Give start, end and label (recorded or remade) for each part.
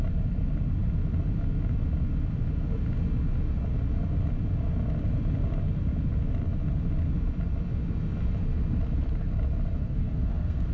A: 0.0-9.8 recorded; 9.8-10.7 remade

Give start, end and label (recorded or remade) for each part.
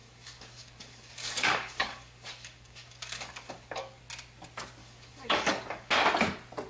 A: 0.0-4.0 remade; 4.0-4.8 recorded; 4.8-5.9 remade; 5.9-6.7 recorded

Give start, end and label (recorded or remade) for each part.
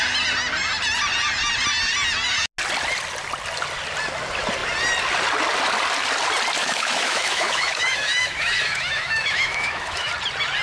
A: 0.0-6.6 recorded; 6.6-10.1 remade; 10.1-10.6 recorded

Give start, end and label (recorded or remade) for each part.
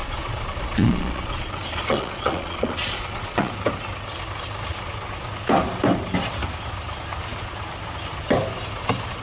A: 0.0-3.5 remade; 3.5-9.2 recorded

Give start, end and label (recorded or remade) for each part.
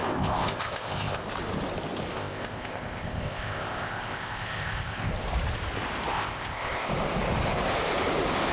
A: 0.0-1.2 remade; 1.2-2.1 recorded; 2.1-5.1 remade; 5.1-6.1 recorded; 6.1-6.9 remade; 6.9-8.5 recorded